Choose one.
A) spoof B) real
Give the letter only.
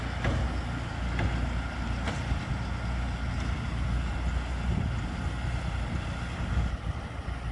B